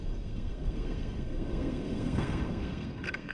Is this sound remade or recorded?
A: remade